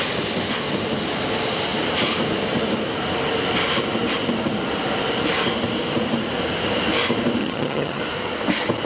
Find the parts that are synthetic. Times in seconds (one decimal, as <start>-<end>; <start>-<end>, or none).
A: 7.4-8.0